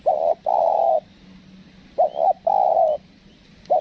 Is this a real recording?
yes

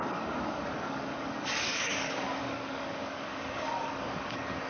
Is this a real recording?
no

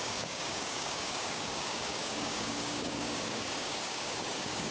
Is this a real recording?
no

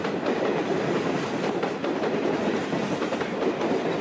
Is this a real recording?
yes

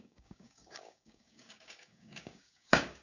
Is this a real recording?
no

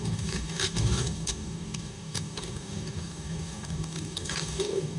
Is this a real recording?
no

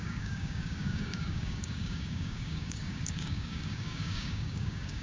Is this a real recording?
no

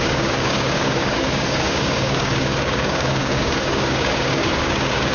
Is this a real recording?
no